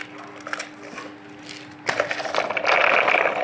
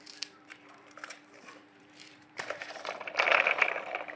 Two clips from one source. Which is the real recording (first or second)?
first